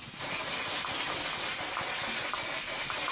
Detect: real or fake real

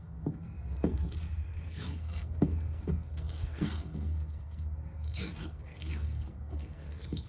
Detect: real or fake fake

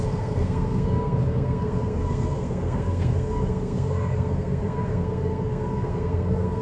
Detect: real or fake fake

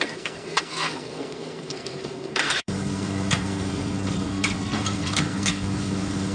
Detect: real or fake fake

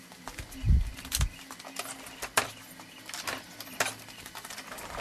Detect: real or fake real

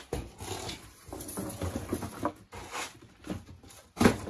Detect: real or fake real